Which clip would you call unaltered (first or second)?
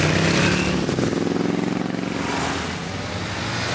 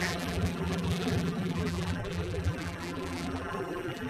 first